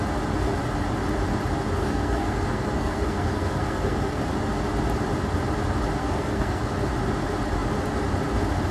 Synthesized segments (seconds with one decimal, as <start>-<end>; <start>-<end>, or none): 1.8-4.2; 6.0-6.6